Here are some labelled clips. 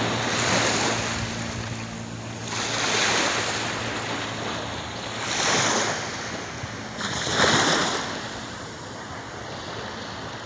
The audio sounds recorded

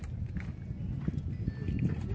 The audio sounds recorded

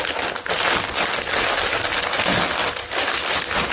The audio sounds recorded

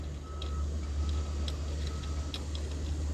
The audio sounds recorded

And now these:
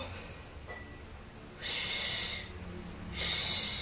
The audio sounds recorded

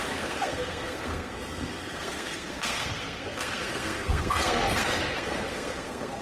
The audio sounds remade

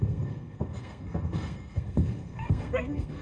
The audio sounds remade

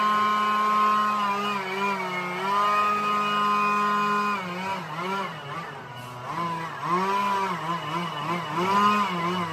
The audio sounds recorded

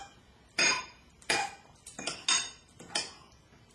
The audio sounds recorded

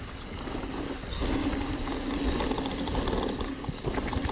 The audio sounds recorded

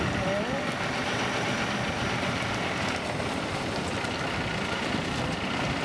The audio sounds recorded